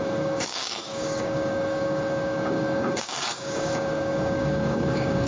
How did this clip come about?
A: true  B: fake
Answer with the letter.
B